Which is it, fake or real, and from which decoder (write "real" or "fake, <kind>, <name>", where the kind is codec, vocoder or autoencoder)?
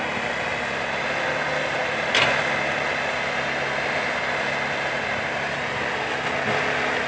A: real